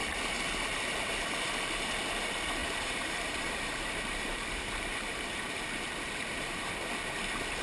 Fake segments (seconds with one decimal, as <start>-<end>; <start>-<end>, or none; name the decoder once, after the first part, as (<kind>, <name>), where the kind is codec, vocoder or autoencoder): 2.6-6.7 (vocoder, BigVGAN v2)